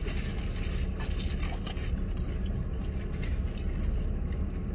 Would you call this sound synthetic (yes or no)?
no